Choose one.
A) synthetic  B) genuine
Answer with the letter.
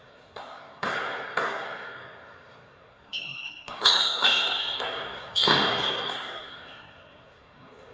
A